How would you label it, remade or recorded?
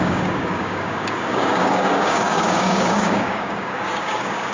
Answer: remade